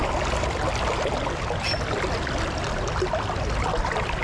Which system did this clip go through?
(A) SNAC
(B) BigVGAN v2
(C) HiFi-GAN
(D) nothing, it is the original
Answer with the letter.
D